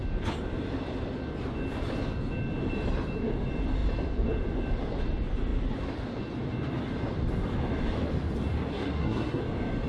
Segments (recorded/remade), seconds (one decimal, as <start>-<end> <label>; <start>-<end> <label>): 0.0-8.7 recorded; 8.7-9.4 remade; 9.4-9.9 recorded